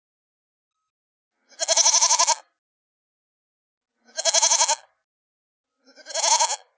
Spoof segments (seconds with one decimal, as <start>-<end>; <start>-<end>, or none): none